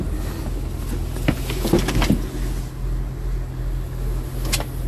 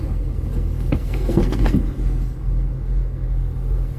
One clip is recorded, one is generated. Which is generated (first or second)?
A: second